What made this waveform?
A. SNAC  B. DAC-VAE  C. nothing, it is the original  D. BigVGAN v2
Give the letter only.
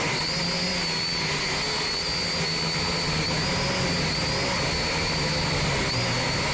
C